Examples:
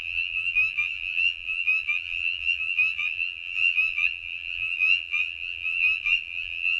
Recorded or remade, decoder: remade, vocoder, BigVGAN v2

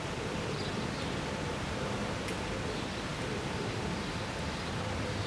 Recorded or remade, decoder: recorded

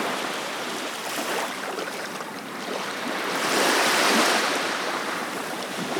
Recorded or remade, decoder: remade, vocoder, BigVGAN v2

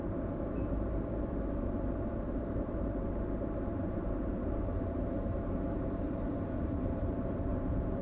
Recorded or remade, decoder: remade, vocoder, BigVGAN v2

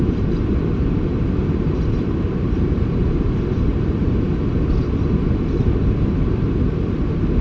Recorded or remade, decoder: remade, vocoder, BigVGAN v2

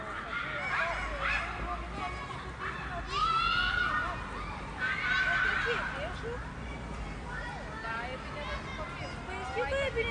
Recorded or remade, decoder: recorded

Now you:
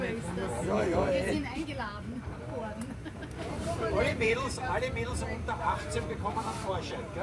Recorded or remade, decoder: remade, vocoder, BigVGAN v2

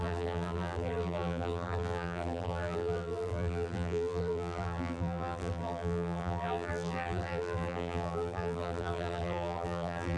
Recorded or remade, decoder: remade, vocoder, BigVGAN v2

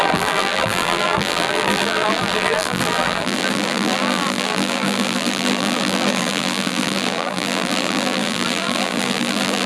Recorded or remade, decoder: remade, vocoder, BigVGAN v2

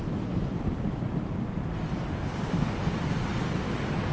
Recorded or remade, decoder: recorded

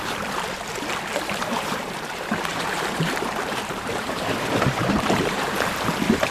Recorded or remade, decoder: remade, vocoder, BigVGAN v2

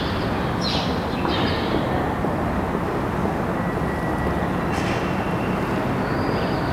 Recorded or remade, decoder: recorded